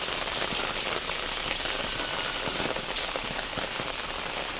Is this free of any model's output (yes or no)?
no